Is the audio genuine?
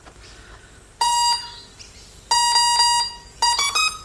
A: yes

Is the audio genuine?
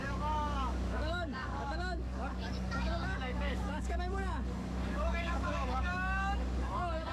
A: no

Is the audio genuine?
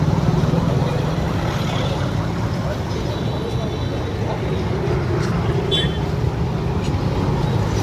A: yes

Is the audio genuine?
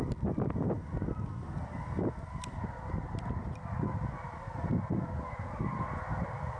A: yes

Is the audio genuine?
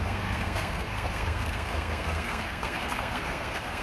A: no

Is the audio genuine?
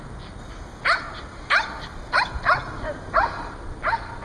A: yes